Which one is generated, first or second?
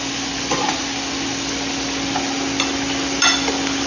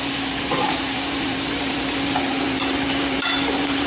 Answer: second